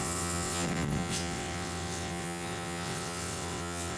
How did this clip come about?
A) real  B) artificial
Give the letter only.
B